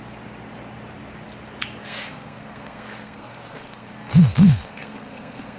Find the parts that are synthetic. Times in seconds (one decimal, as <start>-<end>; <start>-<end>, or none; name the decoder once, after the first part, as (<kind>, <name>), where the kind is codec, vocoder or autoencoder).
1.8-5.6 (codec, SNAC)